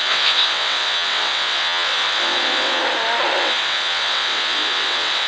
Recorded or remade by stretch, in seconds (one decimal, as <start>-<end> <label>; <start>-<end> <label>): 0.0-2.8 remade; 2.8-3.4 recorded; 3.4-5.3 remade